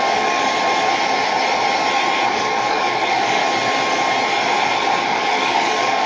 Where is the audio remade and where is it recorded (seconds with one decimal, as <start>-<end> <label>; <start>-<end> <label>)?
0.0-0.5 remade; 0.5-2.3 recorded; 2.3-3.4 remade; 3.4-4.9 recorded; 4.9-6.1 remade